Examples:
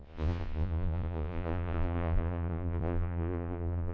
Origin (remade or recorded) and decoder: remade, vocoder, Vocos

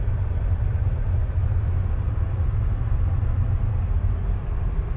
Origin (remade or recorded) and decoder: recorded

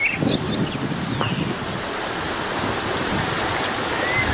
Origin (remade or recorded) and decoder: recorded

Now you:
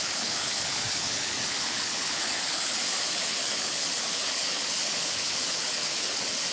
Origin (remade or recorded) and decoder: remade, codec, HILCodec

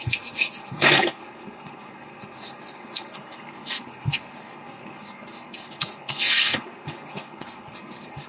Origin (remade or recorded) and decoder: remade, codec, SNAC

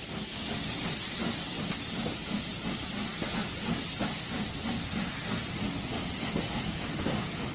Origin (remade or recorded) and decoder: recorded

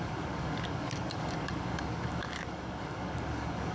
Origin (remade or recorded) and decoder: remade, codec, DAC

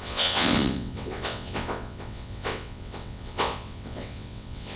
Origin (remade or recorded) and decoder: remade, vocoder, WaveNeXt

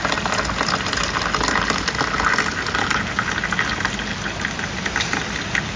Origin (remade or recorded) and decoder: recorded